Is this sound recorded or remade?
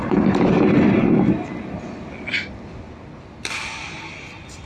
recorded